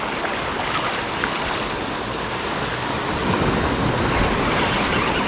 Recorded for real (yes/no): yes